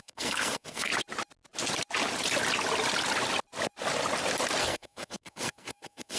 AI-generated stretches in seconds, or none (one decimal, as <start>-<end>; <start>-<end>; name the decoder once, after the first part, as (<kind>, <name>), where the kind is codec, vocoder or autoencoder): 0.0-0.9 (codec, SNAC); 4.6-6.2